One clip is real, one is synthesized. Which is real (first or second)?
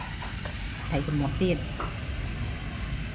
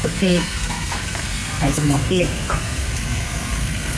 first